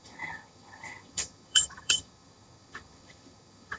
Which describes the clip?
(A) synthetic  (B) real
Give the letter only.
A